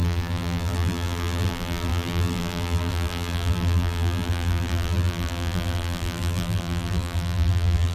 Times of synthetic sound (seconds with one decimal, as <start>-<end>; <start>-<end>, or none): 0.0-7.9